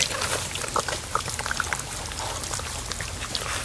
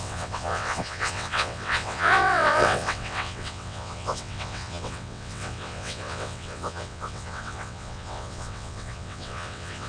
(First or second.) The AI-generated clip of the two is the second